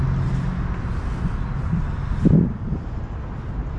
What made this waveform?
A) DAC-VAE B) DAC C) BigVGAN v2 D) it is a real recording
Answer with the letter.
D